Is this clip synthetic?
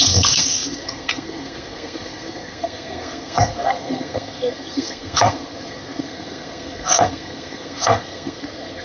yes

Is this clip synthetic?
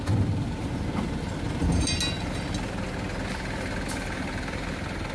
no